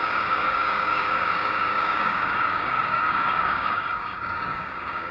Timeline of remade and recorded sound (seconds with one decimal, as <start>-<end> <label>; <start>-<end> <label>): 0.0-5.1 remade